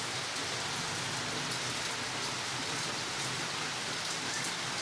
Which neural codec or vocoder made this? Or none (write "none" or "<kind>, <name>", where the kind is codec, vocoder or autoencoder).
none